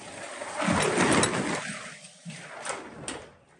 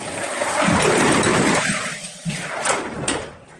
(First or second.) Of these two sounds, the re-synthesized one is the second